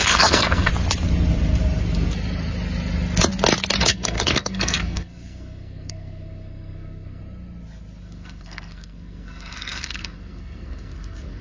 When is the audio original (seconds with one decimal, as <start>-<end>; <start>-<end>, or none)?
0.7-3.8; 7.2-8.0